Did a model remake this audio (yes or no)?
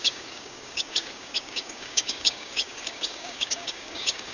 yes